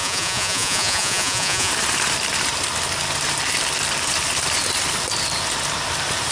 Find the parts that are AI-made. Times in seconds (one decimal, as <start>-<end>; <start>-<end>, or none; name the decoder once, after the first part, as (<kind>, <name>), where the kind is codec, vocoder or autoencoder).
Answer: 0.0-1.7 (vocoder, Vocos)